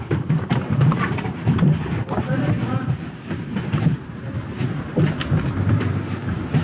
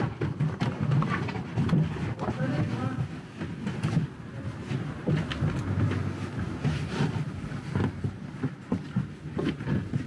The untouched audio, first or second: second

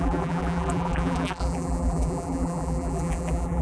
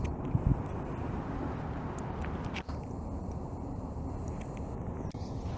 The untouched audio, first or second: second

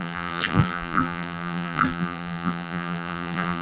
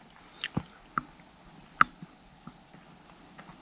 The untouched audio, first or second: second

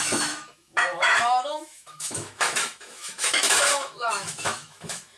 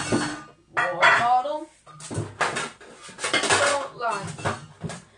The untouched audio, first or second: second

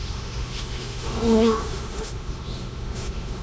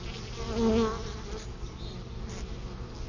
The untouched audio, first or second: second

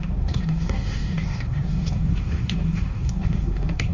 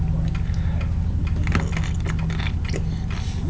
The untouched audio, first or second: second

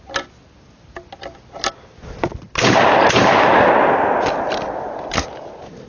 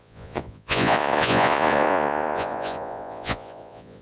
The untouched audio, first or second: first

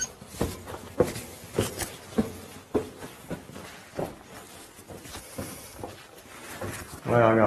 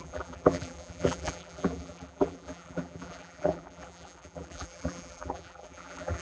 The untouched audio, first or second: first